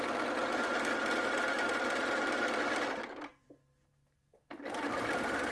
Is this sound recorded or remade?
recorded